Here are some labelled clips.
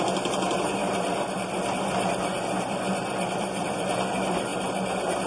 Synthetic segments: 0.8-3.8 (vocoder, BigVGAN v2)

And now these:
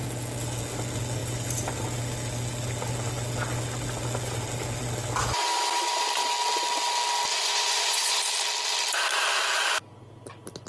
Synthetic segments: 7.3-8.2 (vocoder, Vocos)

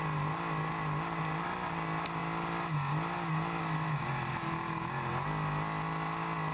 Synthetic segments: none